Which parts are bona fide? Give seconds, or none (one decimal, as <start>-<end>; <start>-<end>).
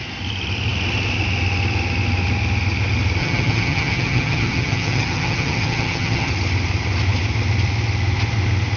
0.0-3.2; 6.3-8.8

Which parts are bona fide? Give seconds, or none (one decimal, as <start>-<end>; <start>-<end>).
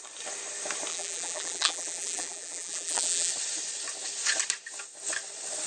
0.0-0.9; 3.3-5.7